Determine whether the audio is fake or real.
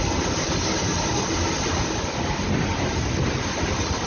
real